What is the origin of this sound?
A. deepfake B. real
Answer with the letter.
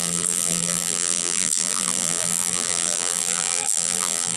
A